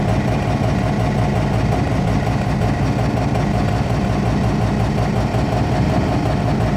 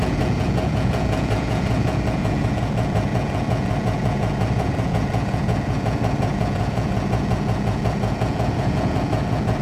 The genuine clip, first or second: first